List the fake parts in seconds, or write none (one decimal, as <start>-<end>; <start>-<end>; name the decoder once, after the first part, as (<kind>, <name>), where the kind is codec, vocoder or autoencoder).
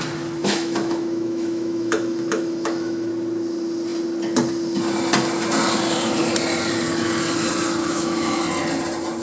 0.4-3.1 (autoencoder, DAC-VAE); 7.8-8.4